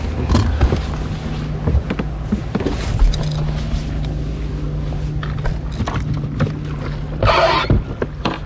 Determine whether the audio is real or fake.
real